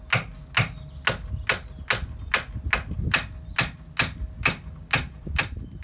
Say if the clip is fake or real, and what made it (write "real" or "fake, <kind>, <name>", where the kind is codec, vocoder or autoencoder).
real